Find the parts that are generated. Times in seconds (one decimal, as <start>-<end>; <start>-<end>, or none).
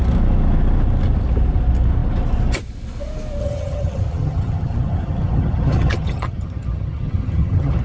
3.4-7.8